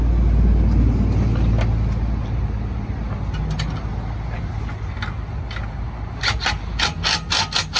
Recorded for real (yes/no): yes